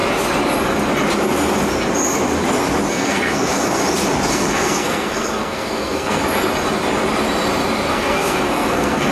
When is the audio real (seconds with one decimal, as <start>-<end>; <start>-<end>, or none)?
0.0-2.9; 3.8-4.3; 6.2-7.9